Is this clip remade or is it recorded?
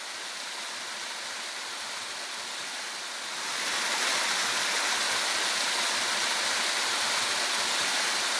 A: recorded